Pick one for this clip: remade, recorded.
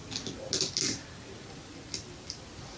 recorded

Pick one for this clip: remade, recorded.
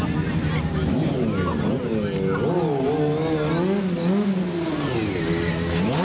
recorded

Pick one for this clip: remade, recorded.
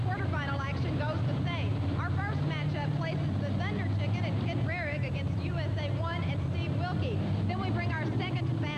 recorded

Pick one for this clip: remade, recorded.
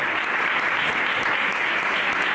recorded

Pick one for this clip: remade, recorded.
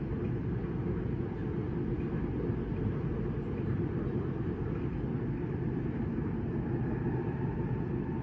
recorded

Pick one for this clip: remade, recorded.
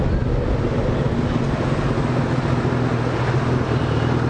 recorded